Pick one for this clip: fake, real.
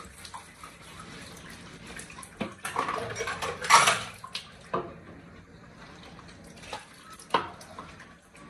fake